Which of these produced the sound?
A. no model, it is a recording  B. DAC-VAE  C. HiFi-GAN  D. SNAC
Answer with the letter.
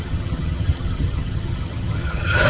C